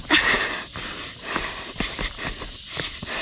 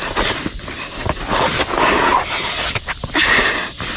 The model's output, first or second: first